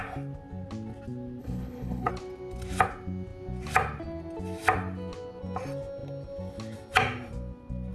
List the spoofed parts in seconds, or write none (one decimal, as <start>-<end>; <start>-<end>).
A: 1.4-2.1